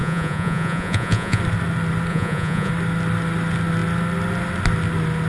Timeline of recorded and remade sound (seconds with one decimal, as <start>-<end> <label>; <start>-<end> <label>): 0.0-1.4 remade; 1.4-2.1 recorded; 2.1-2.7 remade; 2.7-5.3 recorded

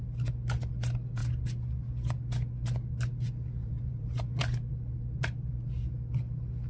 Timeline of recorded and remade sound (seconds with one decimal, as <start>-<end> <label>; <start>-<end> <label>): 0.0-3.6 recorded; 3.6-4.4 remade; 4.4-6.7 recorded

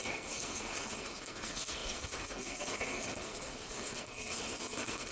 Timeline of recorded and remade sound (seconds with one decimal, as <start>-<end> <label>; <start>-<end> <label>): 0.0-5.1 remade

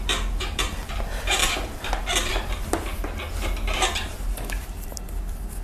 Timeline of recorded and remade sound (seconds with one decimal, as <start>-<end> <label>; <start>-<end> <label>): 0.0-5.6 recorded

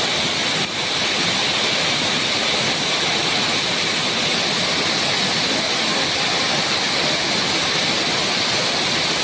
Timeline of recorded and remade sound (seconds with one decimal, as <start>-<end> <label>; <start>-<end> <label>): 0.0-9.2 recorded

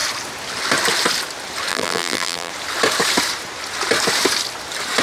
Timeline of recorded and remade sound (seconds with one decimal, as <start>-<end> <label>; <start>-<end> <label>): 0.0-1.7 recorded; 1.7-2.5 remade; 2.5-5.0 recorded